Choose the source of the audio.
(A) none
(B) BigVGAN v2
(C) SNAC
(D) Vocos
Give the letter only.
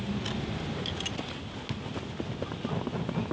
A